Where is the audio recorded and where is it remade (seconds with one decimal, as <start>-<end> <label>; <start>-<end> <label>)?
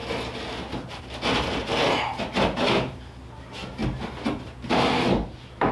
0.0-5.7 recorded